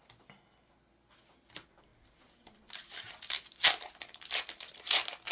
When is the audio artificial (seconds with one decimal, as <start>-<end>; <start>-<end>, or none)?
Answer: none